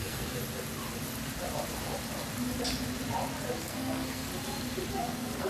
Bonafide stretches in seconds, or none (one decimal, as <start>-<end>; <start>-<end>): 0.4-3.6; 4.3-4.9

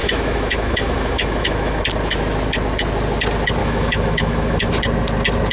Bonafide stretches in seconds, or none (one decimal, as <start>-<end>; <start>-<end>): 1.8-3.6; 4.7-5.5

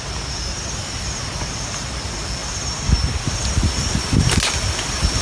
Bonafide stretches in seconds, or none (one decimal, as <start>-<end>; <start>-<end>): 0.0-5.2

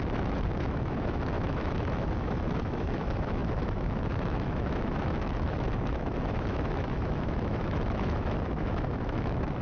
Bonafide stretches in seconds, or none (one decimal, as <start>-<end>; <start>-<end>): none